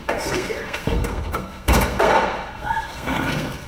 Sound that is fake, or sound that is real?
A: fake